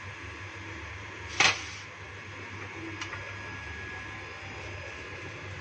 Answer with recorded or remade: recorded